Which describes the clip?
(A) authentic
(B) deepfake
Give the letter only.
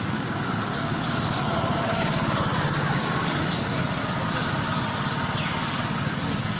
B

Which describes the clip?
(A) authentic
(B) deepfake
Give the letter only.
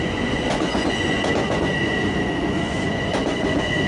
B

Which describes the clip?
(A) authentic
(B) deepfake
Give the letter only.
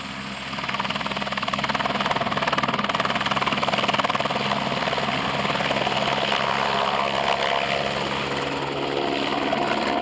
A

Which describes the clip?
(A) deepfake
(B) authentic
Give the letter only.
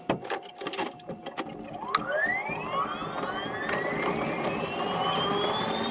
B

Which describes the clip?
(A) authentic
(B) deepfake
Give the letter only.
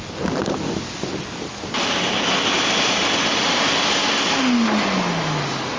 A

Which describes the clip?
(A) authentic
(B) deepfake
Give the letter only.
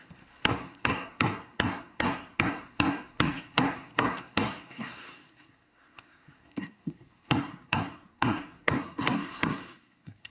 B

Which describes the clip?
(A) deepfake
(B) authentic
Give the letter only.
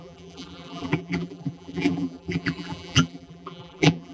A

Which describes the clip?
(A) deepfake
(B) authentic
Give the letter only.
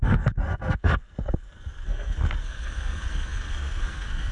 A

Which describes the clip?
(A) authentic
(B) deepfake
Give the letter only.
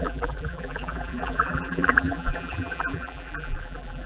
B